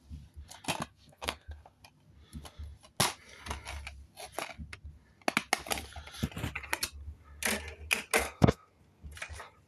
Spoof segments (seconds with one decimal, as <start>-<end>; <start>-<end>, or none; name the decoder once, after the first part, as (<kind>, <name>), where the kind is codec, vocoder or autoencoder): 0.9-1.8 (codec, SNAC); 8.2-8.8